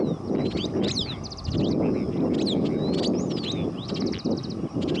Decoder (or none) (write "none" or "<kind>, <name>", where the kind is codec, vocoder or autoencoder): none